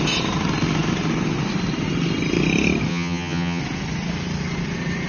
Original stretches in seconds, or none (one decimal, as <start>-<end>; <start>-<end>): 0.0-2.9; 3.6-5.1